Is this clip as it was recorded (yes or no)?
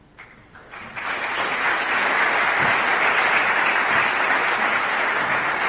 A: yes